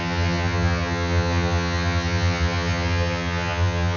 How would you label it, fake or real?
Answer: fake